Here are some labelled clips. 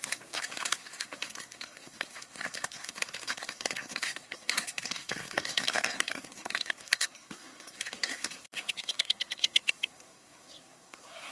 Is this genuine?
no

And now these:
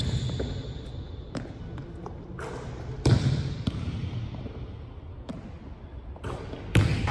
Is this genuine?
yes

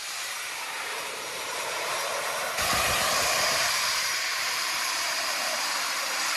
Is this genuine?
no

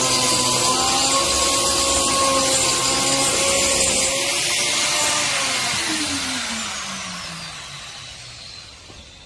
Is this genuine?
yes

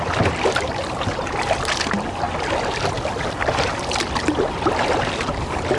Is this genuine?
yes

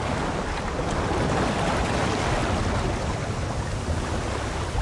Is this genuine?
yes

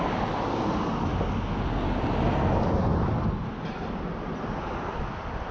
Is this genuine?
yes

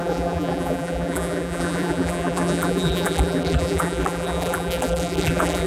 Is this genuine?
no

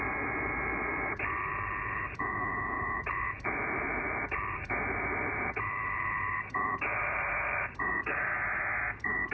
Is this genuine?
no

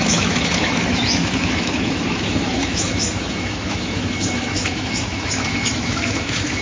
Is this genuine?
no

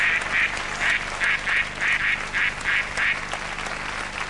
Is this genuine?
yes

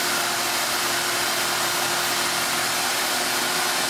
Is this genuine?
yes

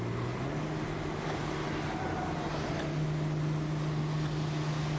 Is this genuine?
yes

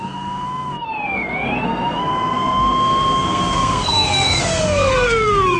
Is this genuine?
no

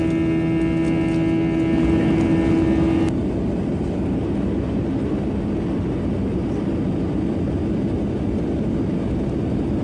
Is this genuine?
yes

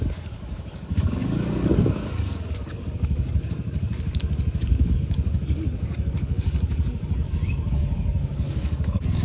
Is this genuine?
no